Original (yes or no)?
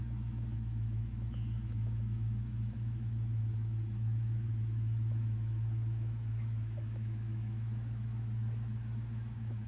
no